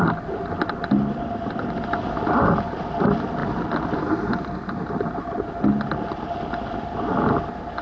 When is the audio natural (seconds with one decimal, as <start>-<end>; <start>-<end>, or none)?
0.0-7.8